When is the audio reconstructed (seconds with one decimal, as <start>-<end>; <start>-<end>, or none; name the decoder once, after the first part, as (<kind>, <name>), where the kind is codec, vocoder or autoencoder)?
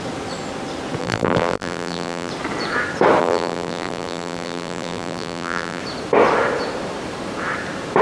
1.0-2.3 (vocoder, BigVGAN v2); 3.2-5.8